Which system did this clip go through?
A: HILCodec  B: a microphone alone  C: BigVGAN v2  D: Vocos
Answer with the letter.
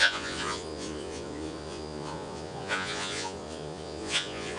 D